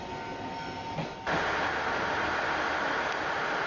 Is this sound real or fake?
real